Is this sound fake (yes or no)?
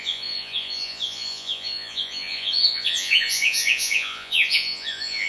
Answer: yes